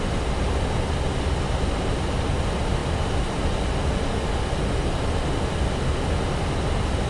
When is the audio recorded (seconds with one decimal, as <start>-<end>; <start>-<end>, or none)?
0.0-7.1